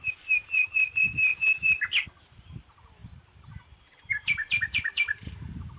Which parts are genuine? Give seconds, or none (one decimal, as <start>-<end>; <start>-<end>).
1.3-2.2